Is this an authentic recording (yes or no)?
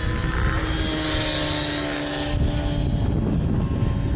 yes